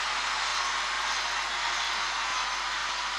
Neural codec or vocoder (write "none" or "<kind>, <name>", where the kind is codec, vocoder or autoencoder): none